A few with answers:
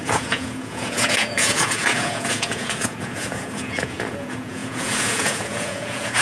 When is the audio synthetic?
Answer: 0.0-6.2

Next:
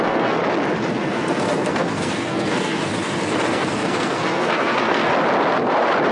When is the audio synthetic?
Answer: 0.0-0.4; 0.9-2.9; 3.5-5.1

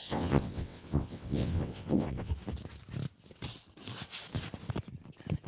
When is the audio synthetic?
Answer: 0.0-2.3

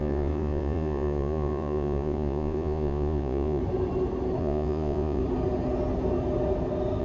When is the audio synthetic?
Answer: 0.0-3.6; 4.4-5.2

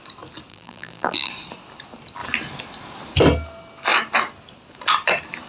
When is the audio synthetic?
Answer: 0.5-1.3